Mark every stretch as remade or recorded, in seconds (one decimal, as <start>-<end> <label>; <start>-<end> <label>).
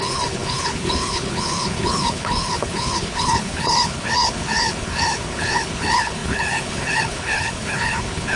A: 0.0-8.4 remade